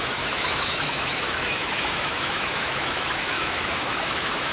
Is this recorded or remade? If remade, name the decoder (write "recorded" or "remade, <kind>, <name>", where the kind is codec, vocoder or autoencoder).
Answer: remade, autoencoder, DAC-VAE